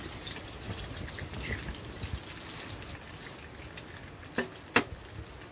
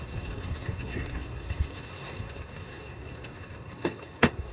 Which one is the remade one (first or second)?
second